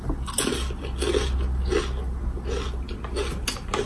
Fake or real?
real